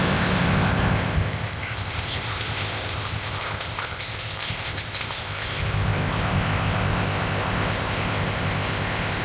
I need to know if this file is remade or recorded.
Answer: remade